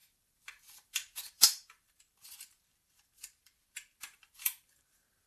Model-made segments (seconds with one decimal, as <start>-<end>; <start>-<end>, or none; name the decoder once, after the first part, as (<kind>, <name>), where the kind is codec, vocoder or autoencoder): 0.0-5.3 (vocoder, BigVGAN v2)

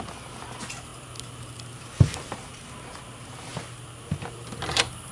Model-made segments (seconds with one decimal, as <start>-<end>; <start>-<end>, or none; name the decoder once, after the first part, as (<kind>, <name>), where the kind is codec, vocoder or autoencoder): none